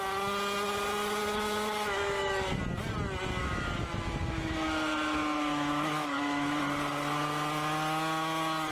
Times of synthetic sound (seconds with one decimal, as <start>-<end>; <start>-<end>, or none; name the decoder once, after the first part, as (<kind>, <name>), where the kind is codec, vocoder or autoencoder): 1.2-2.6 (autoencoder, DAC-VAE); 3.4-6.6